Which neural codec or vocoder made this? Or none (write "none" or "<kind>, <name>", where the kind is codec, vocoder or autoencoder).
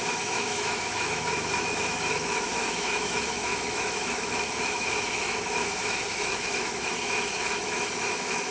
autoencoder, DAC-VAE